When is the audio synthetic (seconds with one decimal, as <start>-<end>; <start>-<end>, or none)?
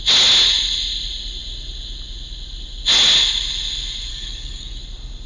4.1-4.8